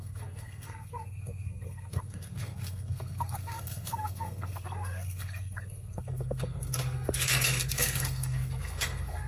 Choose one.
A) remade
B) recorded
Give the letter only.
A